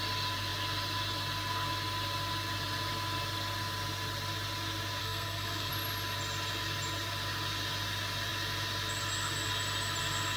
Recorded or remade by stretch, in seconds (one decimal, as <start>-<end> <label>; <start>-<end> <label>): 0.0-5.0 recorded; 5.0-5.7 remade; 5.7-10.4 recorded